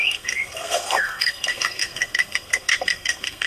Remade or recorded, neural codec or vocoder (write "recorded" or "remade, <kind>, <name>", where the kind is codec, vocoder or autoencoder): remade, codec, SNAC